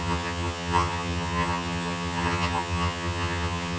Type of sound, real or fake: fake